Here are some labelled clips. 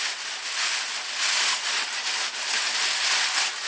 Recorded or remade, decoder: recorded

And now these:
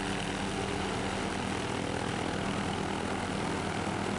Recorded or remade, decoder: recorded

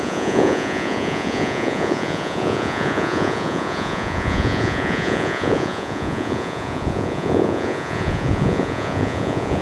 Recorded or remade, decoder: remade, vocoder, Vocos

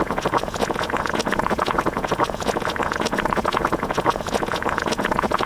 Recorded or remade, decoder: remade, vocoder, Vocos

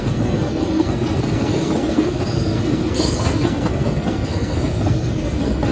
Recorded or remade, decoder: remade, codec, SNAC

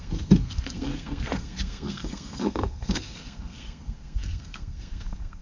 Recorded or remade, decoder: remade, codec, SNAC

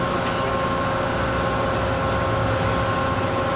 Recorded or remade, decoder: recorded